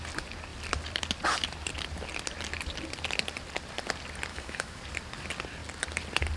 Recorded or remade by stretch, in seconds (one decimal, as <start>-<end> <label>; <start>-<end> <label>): 0.0-4.3 recorded; 4.3-4.8 remade; 4.8-6.4 recorded